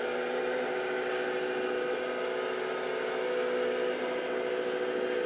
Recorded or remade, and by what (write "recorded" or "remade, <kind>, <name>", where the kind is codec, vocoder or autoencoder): recorded